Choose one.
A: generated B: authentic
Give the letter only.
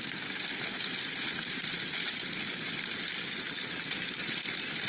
B